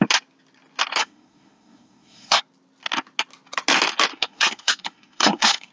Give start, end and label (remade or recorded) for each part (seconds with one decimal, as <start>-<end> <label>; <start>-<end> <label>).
0.0-1.0 recorded; 1.0-2.4 remade; 2.4-4.1 recorded; 4.1-5.7 remade